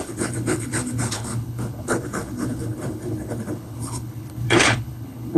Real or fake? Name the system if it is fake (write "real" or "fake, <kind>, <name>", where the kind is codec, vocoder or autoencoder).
fake, codec, HILCodec